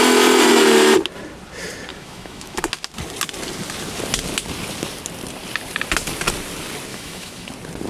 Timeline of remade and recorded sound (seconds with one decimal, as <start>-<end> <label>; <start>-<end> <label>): 0.0-1.9 recorded; 1.9-2.6 remade; 2.6-6.9 recorded; 6.9-7.5 remade; 7.5-7.9 recorded